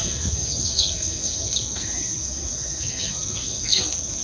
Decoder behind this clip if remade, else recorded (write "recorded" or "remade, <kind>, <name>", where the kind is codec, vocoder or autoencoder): remade, codec, SNAC